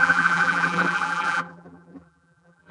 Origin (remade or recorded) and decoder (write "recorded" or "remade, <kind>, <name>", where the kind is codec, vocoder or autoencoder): remade, vocoder, BigVGAN v2